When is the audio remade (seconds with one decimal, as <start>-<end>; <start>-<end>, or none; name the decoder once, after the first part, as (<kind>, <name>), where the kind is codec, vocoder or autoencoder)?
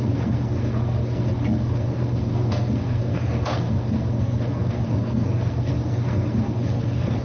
0.0-7.2 (codec, SNAC)